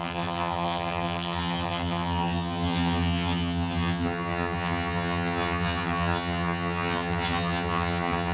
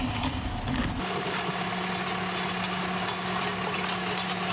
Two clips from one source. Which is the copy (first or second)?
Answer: first